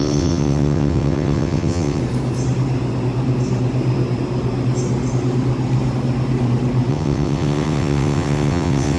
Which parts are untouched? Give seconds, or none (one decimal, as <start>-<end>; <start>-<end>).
2.0-6.9